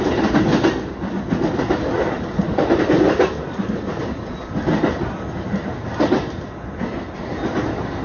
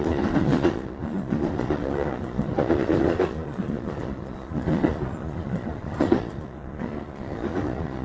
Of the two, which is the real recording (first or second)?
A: first